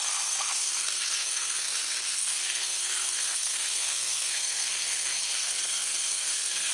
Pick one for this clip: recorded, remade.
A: remade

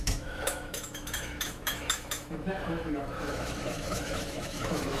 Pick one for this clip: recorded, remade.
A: remade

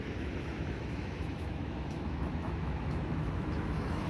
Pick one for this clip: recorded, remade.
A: remade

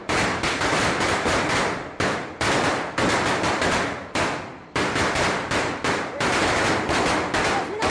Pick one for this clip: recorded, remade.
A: recorded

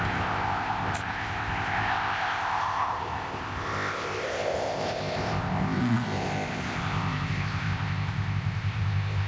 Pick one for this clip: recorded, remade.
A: remade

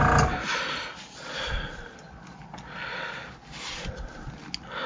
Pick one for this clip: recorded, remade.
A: recorded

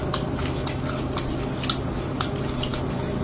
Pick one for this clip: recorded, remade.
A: recorded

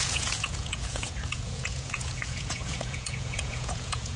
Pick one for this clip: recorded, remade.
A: remade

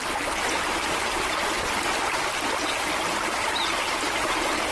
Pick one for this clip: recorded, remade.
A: recorded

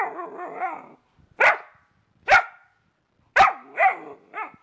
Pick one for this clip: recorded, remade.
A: recorded